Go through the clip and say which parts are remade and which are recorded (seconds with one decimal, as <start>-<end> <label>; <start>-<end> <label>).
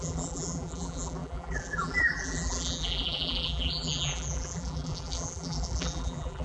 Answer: 0.0-6.4 remade